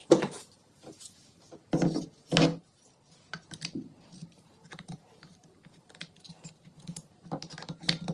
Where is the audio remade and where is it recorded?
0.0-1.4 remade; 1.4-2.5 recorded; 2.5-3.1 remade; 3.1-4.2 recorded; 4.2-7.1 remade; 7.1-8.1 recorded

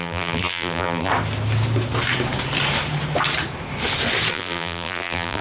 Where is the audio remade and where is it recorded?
0.0-1.1 remade; 1.1-4.3 recorded; 4.3-5.4 remade

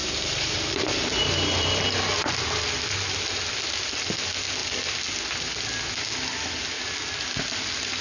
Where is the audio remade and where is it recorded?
0.0-1.8 remade; 1.8-8.0 recorded

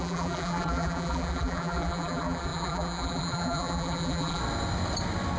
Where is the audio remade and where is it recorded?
0.0-4.4 remade; 4.4-5.4 recorded

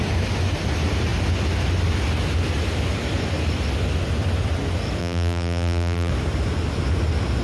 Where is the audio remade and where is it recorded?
0.0-5.0 recorded; 5.0-6.1 remade; 6.1-7.4 recorded

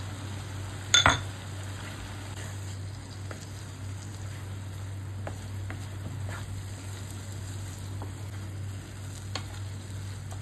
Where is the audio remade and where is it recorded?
0.0-10.4 recorded

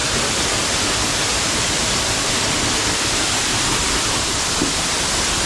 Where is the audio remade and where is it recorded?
0.0-1.3 recorded; 1.3-4.6 remade; 4.6-5.5 recorded